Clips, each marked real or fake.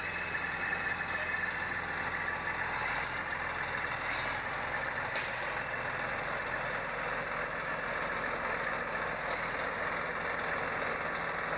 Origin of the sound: real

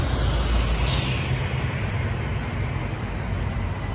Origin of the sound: real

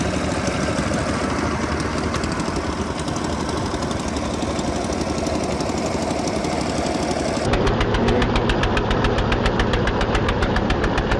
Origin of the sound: real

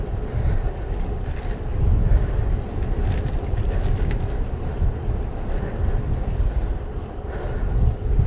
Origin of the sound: real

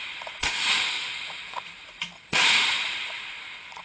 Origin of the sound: fake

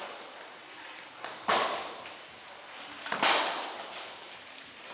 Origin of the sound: real